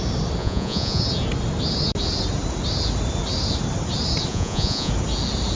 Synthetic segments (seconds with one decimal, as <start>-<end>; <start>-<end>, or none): 0.4-1.0; 4.3-4.9